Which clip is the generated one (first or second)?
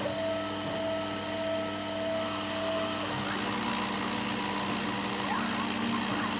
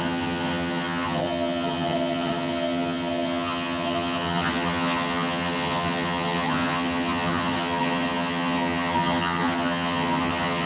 second